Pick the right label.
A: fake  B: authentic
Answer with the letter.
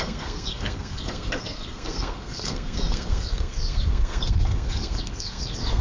A